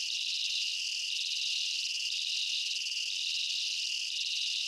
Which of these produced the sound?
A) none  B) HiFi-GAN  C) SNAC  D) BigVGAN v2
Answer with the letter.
A